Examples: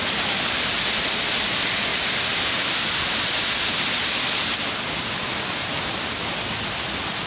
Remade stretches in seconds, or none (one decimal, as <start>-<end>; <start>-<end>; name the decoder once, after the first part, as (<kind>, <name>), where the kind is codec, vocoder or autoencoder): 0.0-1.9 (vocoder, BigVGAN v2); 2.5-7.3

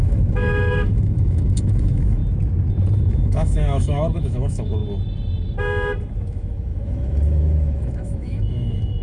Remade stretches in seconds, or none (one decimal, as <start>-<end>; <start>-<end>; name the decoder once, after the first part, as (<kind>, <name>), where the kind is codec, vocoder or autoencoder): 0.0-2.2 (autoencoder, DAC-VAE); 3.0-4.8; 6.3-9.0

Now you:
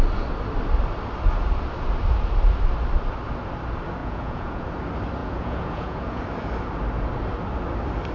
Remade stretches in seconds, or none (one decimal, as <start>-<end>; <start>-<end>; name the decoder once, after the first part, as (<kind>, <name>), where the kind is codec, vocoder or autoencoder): 4.0-4.6 (vocoder, Vocos); 5.2-6.2